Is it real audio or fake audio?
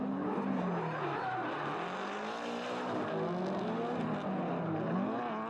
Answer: real